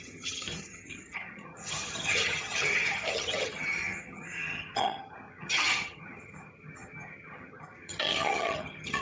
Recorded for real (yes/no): no